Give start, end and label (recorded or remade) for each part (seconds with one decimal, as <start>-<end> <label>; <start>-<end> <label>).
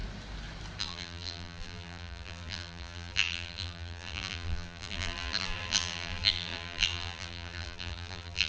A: 0.0-0.8 recorded; 0.8-8.5 remade